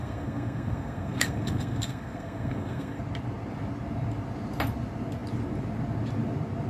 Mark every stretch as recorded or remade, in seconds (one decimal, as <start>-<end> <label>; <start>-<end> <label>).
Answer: 0.0-3.0 remade; 3.0-6.7 recorded